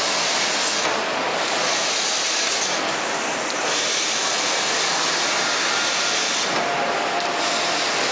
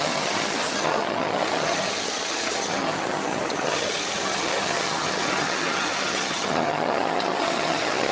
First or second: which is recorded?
first